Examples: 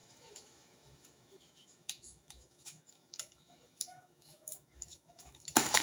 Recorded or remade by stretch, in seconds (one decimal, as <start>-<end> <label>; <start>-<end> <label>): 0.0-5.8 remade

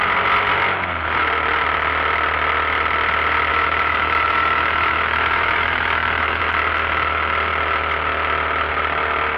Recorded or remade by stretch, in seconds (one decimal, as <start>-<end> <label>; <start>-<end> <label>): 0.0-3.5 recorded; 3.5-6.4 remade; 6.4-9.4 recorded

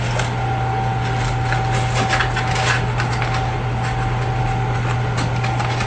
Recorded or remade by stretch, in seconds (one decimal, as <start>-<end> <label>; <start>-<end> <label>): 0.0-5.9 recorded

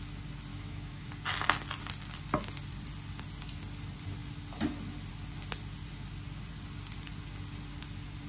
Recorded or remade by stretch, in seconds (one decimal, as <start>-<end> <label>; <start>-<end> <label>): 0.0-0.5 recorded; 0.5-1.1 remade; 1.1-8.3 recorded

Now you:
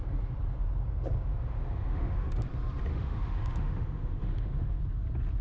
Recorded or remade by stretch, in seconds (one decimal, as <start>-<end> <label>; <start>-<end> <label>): 0.0-1.3 recorded; 1.3-2.5 remade; 2.5-2.9 recorded; 2.9-4.8 remade; 4.8-5.4 recorded